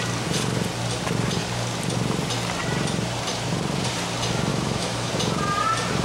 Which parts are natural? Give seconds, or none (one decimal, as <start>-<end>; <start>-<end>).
0.0-4.5; 5.1-6.0